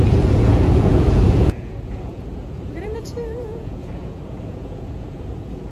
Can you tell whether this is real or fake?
fake